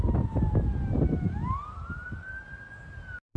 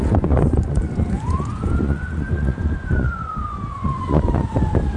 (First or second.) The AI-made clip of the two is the second